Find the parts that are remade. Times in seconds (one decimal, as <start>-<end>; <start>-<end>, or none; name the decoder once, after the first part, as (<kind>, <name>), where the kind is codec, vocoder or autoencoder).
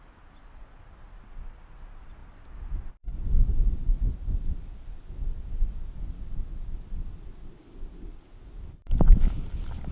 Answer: none